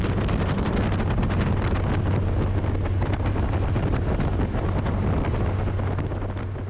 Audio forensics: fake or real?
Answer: real